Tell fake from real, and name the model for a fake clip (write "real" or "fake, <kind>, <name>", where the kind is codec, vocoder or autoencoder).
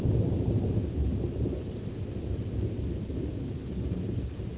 real